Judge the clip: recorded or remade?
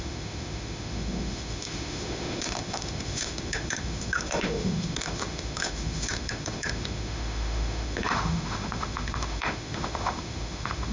remade